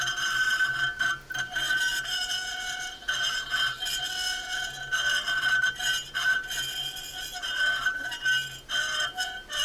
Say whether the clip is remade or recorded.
recorded